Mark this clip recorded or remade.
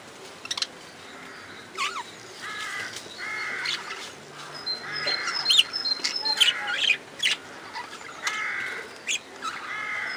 recorded